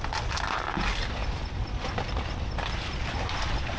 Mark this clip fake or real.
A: real